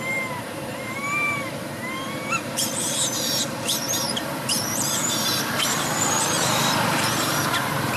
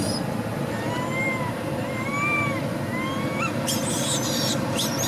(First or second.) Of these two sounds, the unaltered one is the second